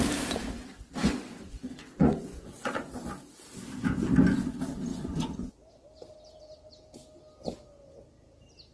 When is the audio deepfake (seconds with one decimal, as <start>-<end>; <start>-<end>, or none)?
1.0-2.9; 4.9-5.5